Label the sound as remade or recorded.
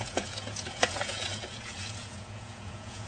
remade